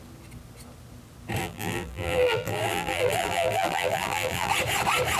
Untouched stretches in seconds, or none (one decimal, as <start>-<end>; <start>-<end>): 0.0-1.4; 4.5-5.2